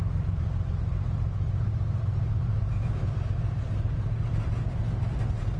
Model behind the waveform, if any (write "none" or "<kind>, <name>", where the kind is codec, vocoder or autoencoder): vocoder, BigVGAN v2